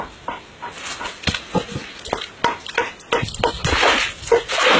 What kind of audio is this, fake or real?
real